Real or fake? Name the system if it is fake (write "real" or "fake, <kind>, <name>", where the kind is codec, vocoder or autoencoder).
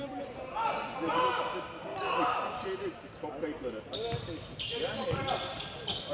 real